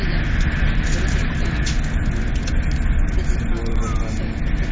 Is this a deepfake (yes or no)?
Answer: no